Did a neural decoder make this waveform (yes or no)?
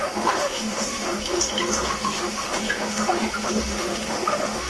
yes